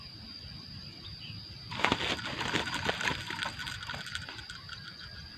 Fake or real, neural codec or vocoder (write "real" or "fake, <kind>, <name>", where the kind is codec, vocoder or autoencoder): real